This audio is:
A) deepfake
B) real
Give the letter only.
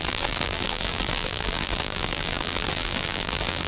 A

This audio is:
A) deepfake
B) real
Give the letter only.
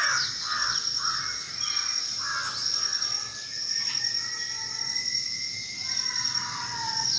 B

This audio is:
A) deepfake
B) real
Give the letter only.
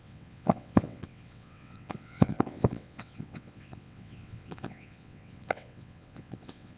A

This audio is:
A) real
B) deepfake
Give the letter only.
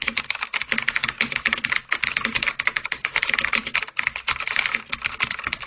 B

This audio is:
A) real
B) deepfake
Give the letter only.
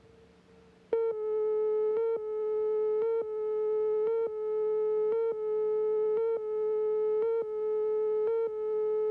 A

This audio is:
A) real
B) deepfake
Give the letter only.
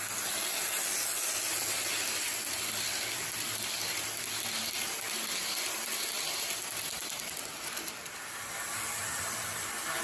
A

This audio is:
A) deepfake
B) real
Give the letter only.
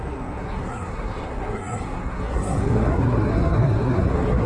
A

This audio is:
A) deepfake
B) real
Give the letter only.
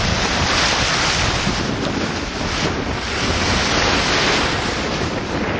B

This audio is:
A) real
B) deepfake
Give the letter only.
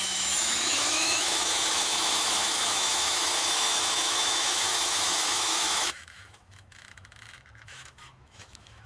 B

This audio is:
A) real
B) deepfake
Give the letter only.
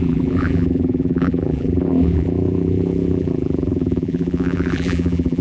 B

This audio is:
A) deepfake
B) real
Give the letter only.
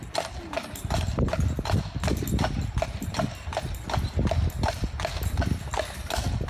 B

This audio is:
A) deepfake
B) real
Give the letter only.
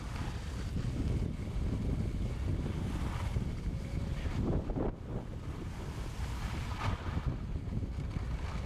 B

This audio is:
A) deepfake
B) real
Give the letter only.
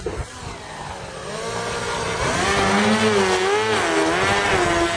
B